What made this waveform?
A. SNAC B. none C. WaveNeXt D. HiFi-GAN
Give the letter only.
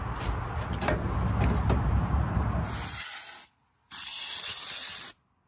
B